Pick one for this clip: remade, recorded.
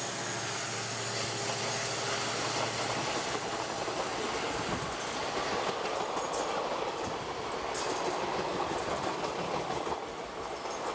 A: recorded